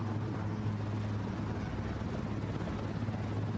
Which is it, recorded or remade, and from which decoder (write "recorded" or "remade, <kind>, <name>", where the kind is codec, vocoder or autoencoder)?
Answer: recorded